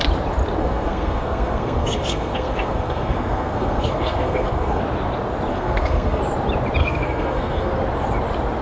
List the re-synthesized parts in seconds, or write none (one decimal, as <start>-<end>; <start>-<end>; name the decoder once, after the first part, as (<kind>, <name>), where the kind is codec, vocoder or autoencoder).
0.6-4.8 (codec, SNAC); 5.5-6.2; 6.8-7.7